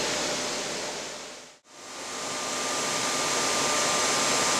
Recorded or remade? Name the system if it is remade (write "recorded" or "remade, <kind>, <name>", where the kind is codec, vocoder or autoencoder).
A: recorded